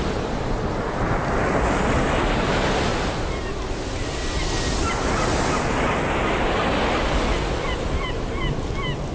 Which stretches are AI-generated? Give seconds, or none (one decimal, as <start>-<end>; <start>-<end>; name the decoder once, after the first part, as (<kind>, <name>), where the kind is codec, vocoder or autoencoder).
none